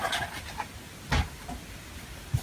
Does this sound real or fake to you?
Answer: real